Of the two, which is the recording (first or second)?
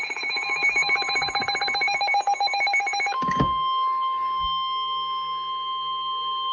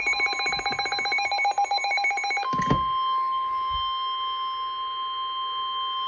second